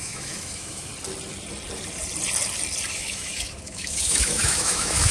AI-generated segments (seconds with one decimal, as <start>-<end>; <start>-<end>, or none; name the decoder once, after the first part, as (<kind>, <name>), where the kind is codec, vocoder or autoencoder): 0.0-0.9 (autoencoder, DAC-VAE); 2.9-5.1